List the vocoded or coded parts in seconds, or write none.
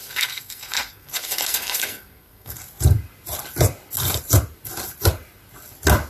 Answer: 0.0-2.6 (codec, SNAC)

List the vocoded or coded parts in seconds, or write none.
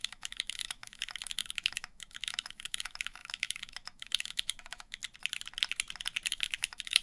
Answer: 0.0-5.0 (autoencoder, DAC-VAE); 6.3-7.0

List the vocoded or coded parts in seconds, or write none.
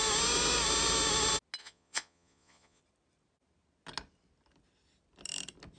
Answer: 1.6-2.8 (vocoder, Vocos)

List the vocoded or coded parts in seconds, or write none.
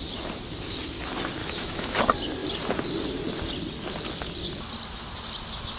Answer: 1.4-2.0 (autoencoder, DAC-VAE)